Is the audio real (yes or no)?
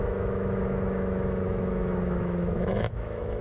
no